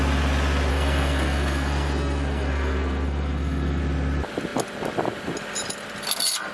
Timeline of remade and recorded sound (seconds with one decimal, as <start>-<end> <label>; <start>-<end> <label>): 0.0-0.7 recorded; 0.7-3.8 remade; 3.8-6.5 recorded